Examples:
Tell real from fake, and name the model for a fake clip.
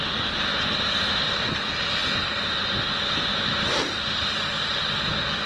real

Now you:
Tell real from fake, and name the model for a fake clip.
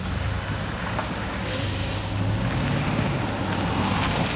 real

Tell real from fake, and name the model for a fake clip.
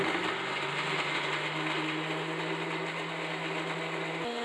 real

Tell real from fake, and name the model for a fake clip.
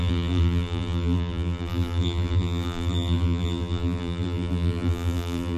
fake, vocoder, BigVGAN v2